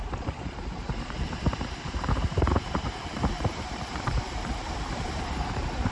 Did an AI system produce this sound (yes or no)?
yes